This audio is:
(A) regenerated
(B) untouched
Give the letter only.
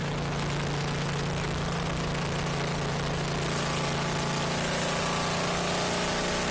B